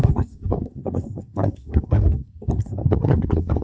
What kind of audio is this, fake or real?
fake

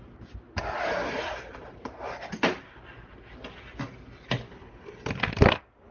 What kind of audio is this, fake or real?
real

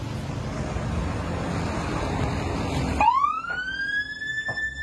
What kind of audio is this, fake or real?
real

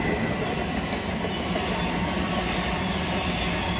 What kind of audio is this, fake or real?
real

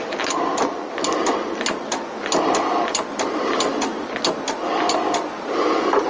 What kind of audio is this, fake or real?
real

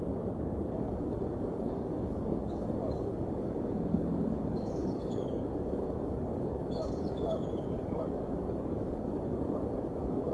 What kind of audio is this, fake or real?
fake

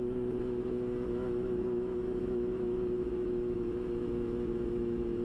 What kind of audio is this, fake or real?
fake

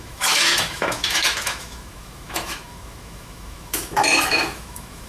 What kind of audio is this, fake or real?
fake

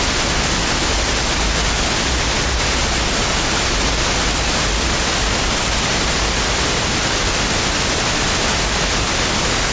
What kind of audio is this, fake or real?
real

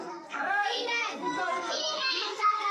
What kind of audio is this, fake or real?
fake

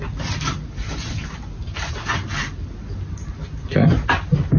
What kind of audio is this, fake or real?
real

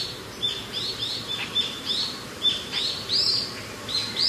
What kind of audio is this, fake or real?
fake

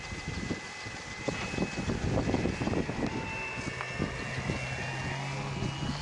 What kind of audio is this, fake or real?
real